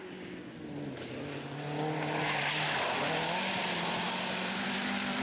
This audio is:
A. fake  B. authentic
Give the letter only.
B